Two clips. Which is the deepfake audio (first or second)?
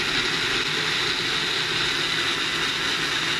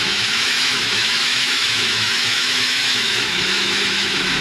second